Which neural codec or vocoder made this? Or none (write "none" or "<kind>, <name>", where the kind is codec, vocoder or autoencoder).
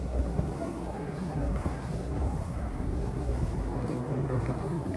codec, SNAC